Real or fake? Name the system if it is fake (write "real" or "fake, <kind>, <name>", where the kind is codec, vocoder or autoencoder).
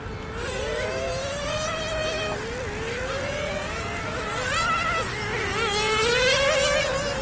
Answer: real